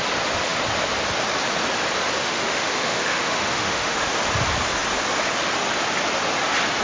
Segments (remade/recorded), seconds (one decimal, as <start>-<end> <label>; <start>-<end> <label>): 0.0-2.2 recorded; 2.2-4.1 remade; 4.1-6.8 recorded